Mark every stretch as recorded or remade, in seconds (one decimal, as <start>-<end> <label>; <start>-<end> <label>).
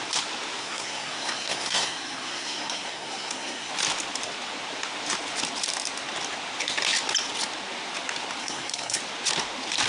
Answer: 0.0-0.6 recorded; 0.6-3.7 remade; 3.7-8.4 recorded; 8.4-9.0 remade; 9.0-9.9 recorded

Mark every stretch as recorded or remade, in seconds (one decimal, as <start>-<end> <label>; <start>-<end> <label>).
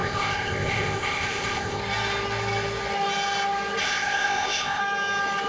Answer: 0.0-1.8 remade; 1.8-3.8 recorded; 3.8-4.8 remade; 4.8-5.5 recorded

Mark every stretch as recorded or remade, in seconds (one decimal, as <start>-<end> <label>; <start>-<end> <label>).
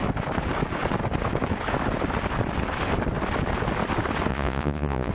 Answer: 0.0-4.3 recorded; 4.3-5.1 remade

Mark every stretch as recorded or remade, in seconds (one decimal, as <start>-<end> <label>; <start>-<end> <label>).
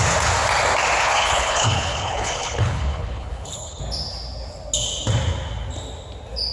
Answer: 0.0-1.0 recorded; 1.0-3.8 remade; 3.8-6.5 recorded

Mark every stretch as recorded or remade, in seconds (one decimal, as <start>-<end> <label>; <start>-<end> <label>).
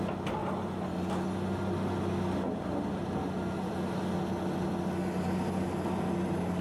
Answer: 0.0-6.6 recorded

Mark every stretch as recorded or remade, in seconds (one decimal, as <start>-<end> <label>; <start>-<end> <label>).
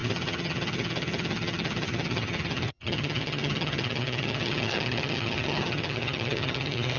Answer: 0.0-7.0 remade